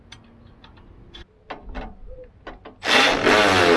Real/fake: real